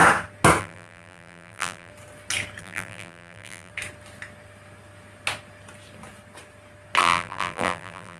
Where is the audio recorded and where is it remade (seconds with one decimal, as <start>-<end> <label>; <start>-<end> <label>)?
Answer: 0.0-0.6 recorded; 0.6-1.9 remade; 1.9-2.6 recorded; 2.6-3.7 remade; 3.7-7.0 recorded; 7.0-8.2 remade